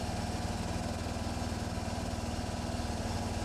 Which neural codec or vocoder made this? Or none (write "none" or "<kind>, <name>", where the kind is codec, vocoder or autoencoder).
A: none